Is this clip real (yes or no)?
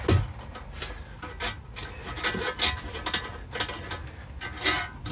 yes